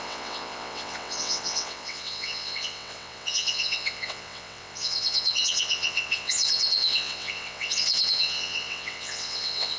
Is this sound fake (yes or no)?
yes